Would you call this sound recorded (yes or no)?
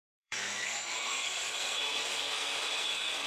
no